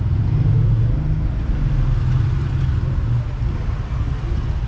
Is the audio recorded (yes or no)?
yes